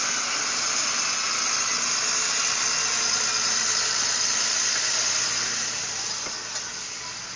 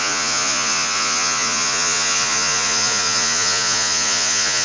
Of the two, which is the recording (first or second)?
first